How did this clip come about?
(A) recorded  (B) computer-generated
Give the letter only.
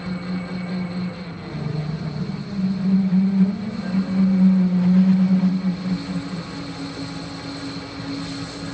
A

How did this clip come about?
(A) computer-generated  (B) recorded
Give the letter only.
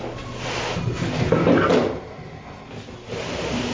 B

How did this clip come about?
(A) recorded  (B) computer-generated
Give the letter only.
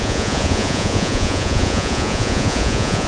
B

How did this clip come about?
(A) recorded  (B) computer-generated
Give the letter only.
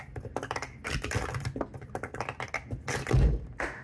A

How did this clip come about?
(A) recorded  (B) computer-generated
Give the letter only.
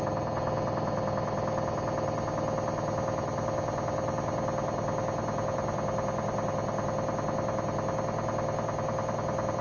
A